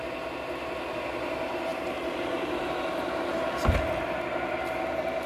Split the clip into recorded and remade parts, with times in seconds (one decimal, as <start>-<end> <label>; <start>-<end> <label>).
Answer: 0.0-5.3 recorded